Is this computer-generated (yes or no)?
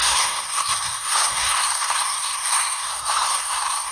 yes